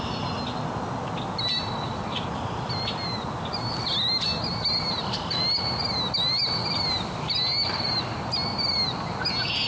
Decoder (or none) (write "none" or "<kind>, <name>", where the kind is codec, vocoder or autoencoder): none